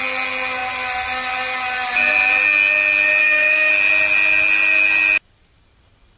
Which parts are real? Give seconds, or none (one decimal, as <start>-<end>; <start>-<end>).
0.0-3.2; 3.7-6.2